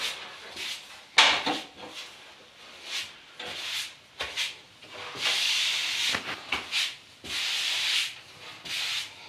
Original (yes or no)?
yes